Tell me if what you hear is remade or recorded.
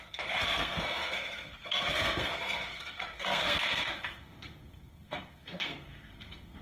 remade